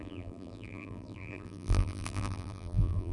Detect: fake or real fake